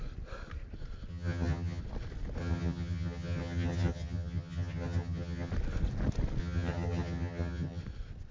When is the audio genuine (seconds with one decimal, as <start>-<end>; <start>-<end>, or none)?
0.0-1.1; 1.8-2.4; 5.5-6.4; 7.8-8.3